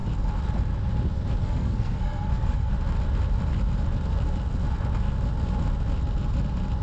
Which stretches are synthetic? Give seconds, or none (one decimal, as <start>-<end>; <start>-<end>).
1.4-2.7

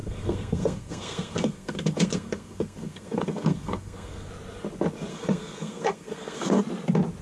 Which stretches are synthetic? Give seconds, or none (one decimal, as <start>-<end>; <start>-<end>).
0.0-4.3; 5.1-6.6

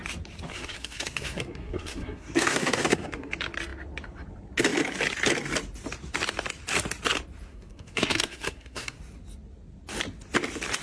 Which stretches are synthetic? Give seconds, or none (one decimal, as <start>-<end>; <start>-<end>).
0.5-3.3; 7.5-9.0

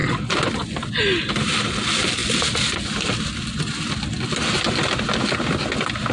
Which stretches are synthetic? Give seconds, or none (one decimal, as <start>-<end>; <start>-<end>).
none

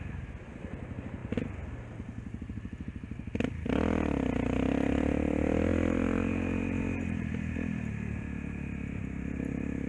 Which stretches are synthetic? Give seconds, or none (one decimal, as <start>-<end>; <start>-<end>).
none

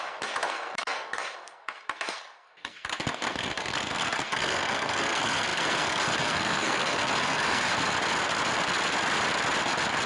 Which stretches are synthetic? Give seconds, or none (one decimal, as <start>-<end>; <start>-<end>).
0.0-7.7

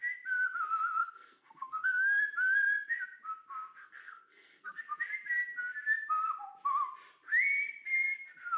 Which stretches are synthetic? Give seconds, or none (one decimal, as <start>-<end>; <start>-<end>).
1.0-2.2; 3.8-4.8

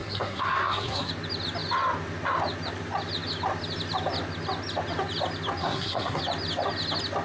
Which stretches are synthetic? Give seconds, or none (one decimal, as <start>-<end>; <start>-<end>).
0.0-1.1; 5.6-6.2